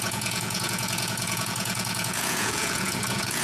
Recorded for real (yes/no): no